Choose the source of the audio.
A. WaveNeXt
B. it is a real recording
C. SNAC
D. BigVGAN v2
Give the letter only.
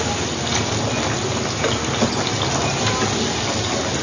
B